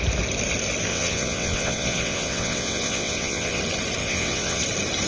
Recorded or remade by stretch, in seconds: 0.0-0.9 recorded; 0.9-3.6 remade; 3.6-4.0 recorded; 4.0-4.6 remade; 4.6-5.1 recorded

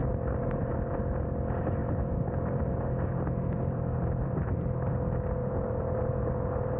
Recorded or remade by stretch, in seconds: 0.0-1.0 remade; 1.0-1.8 recorded; 1.8-4.9 remade; 4.9-5.4 recorded; 5.4-6.8 remade

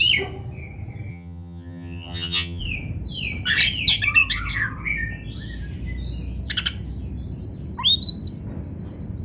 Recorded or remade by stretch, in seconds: 0.0-1.1 recorded; 1.1-2.6 remade; 2.6-9.2 recorded

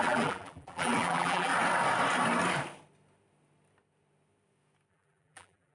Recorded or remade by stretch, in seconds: 0.0-1.5 remade; 1.5-4.9 recorded; 4.9-5.7 remade

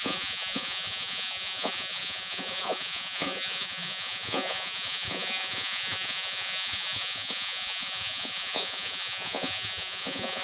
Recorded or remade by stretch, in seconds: 0.0-10.4 remade

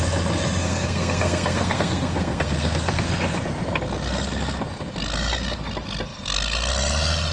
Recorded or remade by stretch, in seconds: 0.0-0.6 recorded; 0.6-3.1 remade; 3.1-7.3 recorded